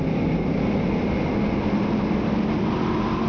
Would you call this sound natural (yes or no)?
yes